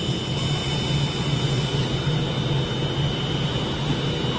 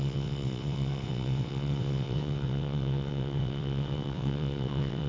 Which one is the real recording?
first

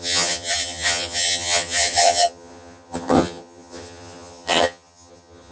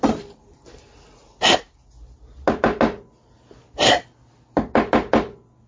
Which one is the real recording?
second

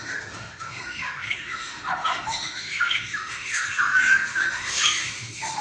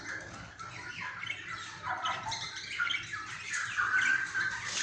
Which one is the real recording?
second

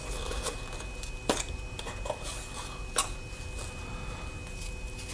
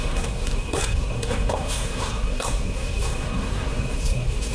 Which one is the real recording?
first